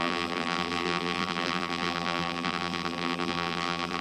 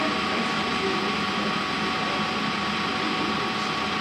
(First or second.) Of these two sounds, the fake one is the first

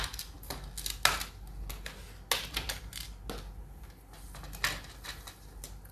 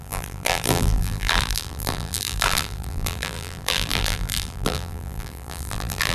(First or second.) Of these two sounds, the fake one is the second